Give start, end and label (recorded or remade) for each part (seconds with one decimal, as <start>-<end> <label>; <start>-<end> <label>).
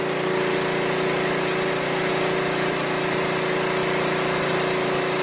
0.0-5.2 recorded